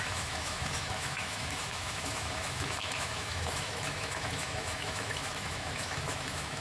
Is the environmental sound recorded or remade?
remade